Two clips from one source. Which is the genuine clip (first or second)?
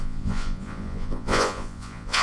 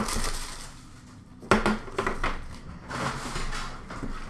second